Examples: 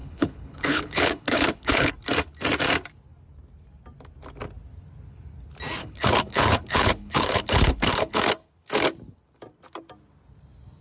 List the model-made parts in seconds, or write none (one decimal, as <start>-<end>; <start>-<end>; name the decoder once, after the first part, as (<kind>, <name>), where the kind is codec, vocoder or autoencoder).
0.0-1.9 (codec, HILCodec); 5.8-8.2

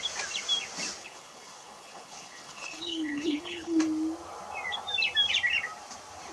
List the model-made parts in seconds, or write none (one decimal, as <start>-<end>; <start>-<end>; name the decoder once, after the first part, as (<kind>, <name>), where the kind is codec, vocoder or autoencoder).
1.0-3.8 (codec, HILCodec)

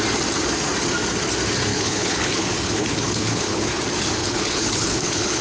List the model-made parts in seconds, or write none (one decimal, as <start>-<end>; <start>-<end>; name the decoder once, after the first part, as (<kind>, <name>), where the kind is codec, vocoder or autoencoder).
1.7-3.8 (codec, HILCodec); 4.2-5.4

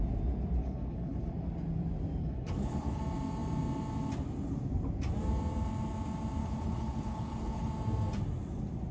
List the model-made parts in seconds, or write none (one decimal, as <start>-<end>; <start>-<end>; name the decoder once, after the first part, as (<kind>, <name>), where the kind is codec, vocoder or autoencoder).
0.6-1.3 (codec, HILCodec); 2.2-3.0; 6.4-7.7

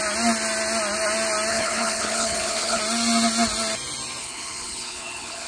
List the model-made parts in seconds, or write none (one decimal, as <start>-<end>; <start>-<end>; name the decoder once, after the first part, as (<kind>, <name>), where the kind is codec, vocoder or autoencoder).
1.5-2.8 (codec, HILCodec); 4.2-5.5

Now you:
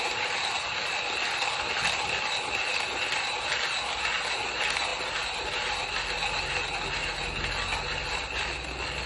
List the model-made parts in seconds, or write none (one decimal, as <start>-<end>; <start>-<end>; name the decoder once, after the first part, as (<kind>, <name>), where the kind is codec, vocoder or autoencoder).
none

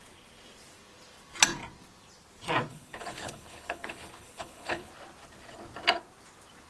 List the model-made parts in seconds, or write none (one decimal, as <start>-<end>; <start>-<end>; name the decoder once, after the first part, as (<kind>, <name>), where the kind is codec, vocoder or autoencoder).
2.7-4.9 (codec, HILCodec)